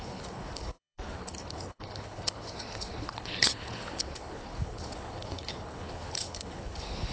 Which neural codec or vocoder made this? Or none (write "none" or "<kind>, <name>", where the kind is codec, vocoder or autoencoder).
codec, HILCodec